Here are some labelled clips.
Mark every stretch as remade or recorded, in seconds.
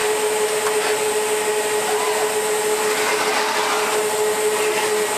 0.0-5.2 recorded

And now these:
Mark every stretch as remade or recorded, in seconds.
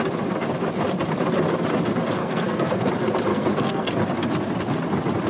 0.0-2.2 recorded; 2.2-2.9 remade; 2.9-3.3 recorded; 3.3-3.9 remade; 3.9-5.3 recorded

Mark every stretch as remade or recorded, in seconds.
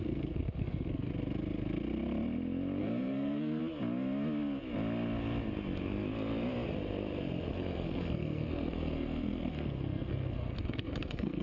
0.0-1.1 remade; 1.1-2.8 recorded; 2.8-3.6 remade; 3.6-7.5 recorded; 7.5-11.4 remade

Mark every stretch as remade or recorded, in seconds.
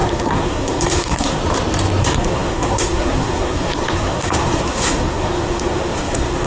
0.0-1.4 remade; 1.4-2.0 recorded; 2.0-6.5 remade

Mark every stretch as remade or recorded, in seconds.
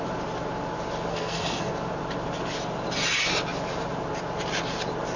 0.0-1.1 recorded; 1.1-1.7 remade; 1.7-5.2 recorded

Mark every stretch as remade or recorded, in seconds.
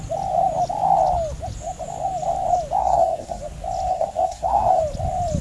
0.0-2.8 recorded; 2.8-3.4 remade; 3.4-3.9 recorded; 3.9-4.8 remade; 4.8-5.4 recorded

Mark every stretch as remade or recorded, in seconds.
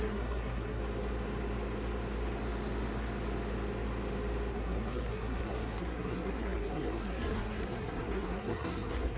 0.0-0.8 remade; 0.8-4.5 recorded; 4.5-9.2 remade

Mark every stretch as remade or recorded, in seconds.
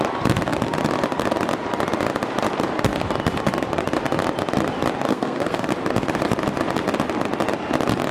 0.0-5.1 recorded; 5.1-5.7 remade; 5.7-8.1 recorded